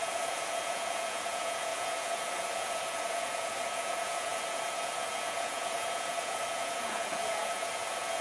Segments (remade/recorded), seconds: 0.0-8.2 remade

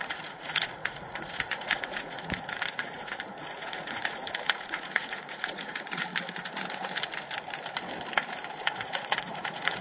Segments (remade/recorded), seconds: 0.0-6.1 remade; 6.1-8.6 recorded; 8.6-9.8 remade

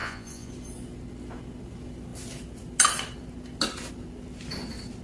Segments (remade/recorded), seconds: 0.0-0.5 remade; 0.5-5.0 recorded

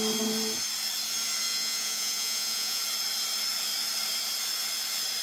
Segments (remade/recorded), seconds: 0.0-1.5 recorded; 1.5-2.8 remade; 2.8-5.2 recorded